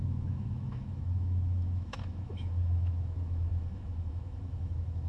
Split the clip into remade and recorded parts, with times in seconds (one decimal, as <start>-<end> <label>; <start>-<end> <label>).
0.0-5.1 remade